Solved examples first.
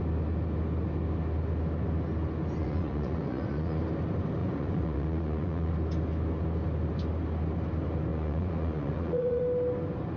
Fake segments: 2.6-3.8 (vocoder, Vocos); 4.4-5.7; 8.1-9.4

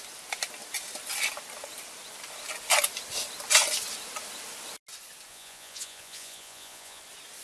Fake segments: 5.3-7.0 (vocoder, Vocos)